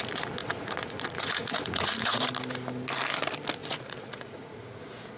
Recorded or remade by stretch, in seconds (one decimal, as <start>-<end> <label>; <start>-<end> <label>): 0.0-0.4 recorded; 0.4-2.3 remade; 2.3-3.6 recorded; 3.6-4.8 remade; 4.8-5.2 recorded